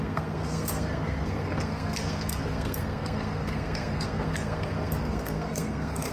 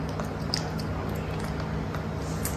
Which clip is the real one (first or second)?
second